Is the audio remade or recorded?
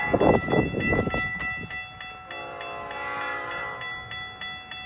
recorded